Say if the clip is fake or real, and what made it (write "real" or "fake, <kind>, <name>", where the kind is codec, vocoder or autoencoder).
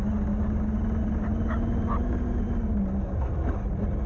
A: real